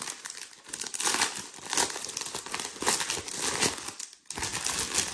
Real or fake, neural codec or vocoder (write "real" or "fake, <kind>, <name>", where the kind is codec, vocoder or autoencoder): real